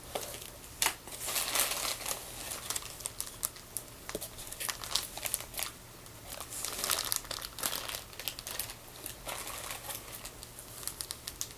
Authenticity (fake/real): real